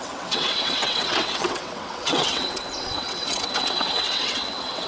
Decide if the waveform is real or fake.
fake